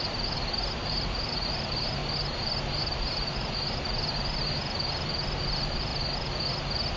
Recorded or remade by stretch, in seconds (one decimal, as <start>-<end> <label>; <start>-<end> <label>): 0.0-2.0 remade; 2.0-2.8 recorded; 2.8-4.6 remade; 4.6-5.4 recorded; 5.4-5.9 remade; 5.9-7.0 recorded